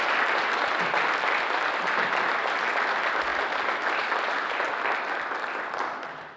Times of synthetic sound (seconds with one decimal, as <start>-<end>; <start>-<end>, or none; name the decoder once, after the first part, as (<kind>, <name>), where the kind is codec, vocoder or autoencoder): none